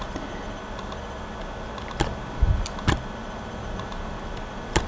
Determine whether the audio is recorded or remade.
recorded